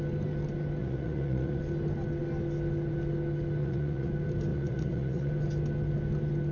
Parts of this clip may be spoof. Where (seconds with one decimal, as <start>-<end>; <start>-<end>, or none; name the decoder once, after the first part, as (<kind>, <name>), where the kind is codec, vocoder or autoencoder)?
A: 0.8-1.6 (vocoder, Vocos); 3.6-4.1; 4.5-5.3